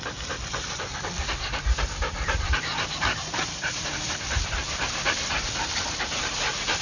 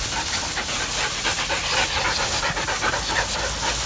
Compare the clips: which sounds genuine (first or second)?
second